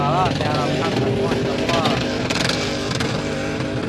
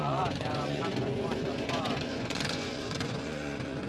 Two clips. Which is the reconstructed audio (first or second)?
second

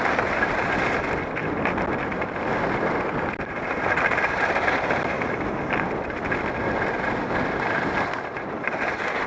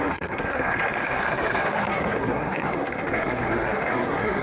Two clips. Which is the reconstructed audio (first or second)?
second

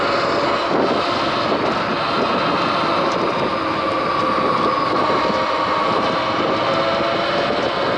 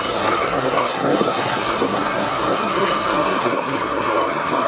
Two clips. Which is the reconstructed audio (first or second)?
second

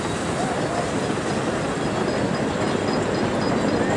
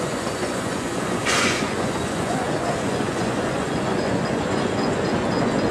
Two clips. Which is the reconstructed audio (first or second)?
second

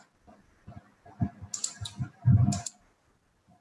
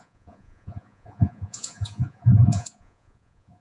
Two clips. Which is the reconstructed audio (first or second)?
second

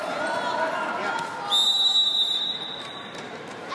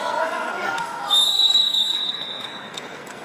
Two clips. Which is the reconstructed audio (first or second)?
second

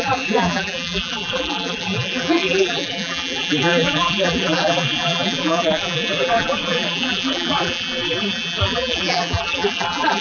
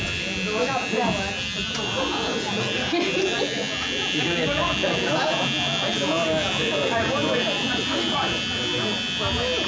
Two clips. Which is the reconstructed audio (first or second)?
first